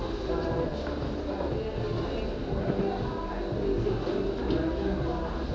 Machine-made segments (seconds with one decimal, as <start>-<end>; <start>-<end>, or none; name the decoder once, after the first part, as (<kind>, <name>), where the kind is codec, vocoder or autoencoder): none